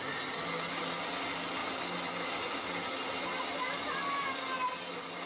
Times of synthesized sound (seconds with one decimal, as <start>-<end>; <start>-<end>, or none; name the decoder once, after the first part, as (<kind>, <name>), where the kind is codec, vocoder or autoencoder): none